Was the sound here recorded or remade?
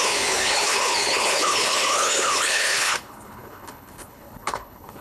remade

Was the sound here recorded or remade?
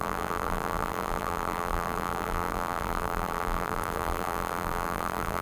remade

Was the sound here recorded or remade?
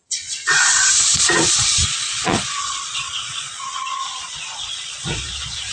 remade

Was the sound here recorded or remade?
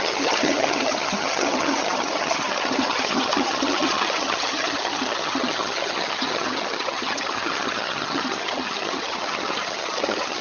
remade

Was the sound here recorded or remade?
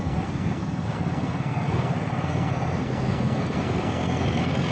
remade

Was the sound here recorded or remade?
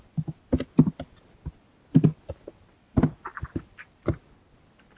recorded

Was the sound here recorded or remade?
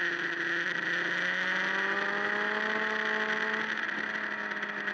recorded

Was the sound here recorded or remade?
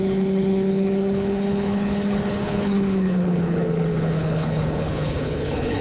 remade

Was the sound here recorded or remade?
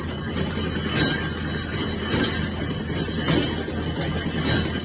recorded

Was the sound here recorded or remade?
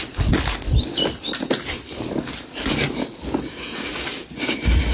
recorded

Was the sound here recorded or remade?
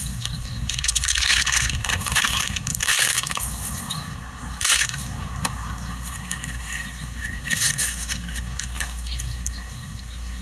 remade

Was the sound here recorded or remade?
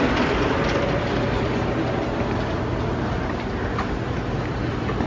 recorded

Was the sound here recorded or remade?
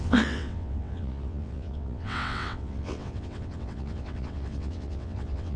remade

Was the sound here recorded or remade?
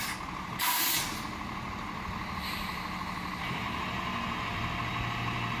recorded